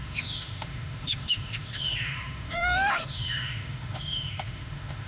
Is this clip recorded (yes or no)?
no